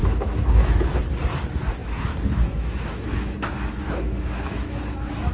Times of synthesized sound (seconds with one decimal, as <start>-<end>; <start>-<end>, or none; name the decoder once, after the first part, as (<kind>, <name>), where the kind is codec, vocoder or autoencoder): 0.0-1.0 (autoencoder, DAC-VAE); 1.8-5.3